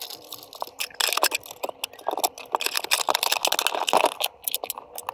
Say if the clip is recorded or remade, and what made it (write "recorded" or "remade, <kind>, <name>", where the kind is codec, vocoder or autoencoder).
recorded